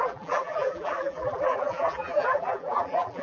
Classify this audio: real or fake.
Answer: fake